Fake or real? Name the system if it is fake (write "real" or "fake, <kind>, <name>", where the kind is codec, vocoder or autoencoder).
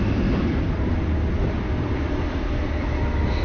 fake, vocoder, BigVGAN v2